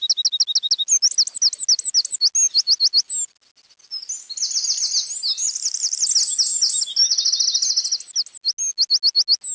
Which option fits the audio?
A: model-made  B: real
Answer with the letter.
B